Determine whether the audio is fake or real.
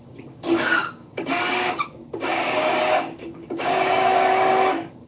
fake